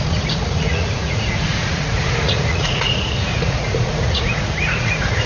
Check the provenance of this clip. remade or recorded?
remade